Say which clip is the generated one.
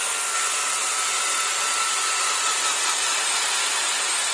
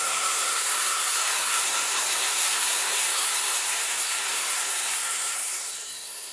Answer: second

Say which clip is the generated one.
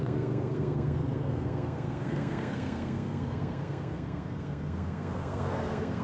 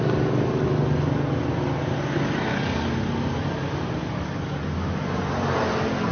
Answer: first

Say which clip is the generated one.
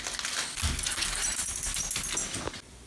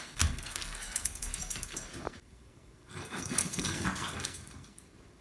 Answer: second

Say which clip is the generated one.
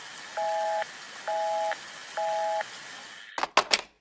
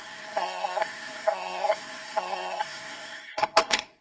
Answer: second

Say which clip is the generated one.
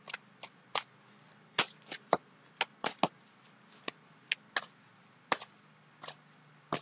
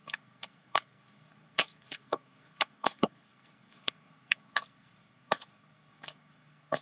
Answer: second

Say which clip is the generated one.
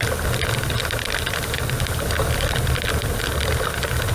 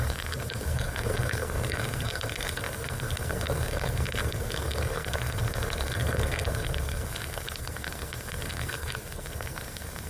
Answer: second